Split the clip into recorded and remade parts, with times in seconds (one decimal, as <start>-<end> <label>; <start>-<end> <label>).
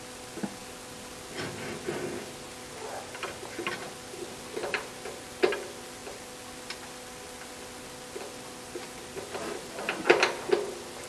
0.0-4.6 recorded; 4.6-5.5 remade; 5.5-11.1 recorded